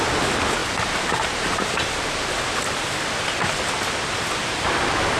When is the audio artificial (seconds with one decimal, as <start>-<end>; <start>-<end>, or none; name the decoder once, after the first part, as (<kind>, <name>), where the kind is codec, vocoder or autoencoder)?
0.6-3.7 (vocoder, BigVGAN v2); 4.4-5.2